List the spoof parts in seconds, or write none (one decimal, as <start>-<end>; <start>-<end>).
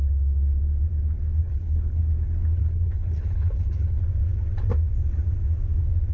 1.4-2.0; 2.6-4.0